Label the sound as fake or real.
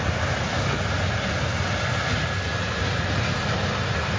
real